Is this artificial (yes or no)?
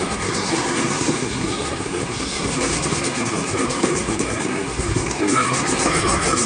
yes